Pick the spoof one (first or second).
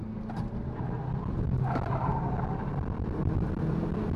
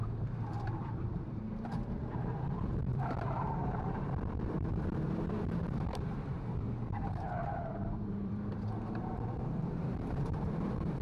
second